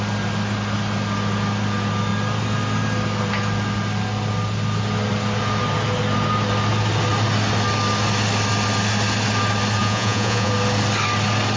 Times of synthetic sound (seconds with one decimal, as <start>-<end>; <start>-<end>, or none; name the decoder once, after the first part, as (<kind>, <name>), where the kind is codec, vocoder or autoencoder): 9.8-10.5 (vocoder, Vocos)